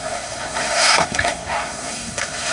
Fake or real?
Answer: fake